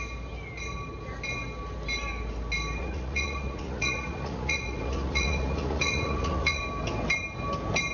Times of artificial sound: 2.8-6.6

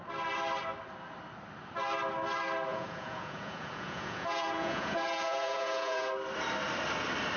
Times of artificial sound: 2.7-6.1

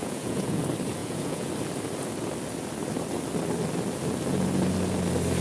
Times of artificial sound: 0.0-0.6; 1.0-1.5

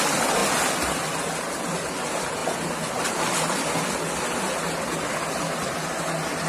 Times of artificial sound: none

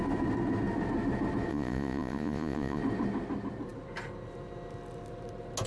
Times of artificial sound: 1.5-2.8

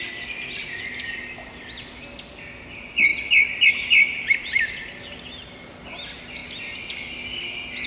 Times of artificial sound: none

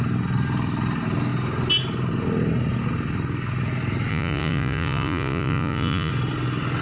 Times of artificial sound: 4.1-6.1